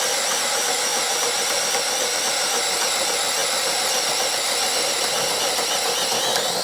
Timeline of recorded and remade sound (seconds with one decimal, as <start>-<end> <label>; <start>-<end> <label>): 0.0-6.6 recorded